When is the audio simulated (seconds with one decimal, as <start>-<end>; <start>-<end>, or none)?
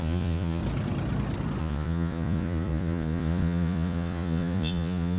0.0-0.6; 1.6-5.2